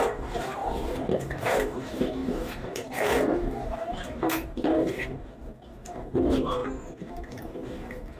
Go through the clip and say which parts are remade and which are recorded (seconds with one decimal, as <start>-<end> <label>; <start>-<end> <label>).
0.0-8.2 remade